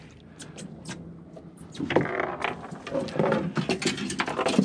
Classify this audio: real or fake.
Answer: real